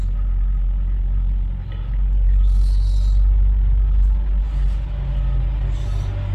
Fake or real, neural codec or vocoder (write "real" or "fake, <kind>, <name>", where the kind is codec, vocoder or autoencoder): real